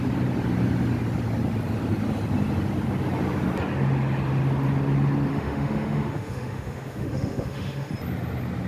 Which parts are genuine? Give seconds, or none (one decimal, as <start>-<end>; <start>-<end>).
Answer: 0.0-5.3; 7.9-8.7